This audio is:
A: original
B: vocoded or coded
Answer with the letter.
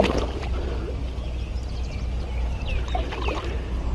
A